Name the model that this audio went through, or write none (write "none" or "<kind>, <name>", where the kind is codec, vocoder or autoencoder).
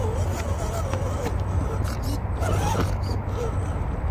none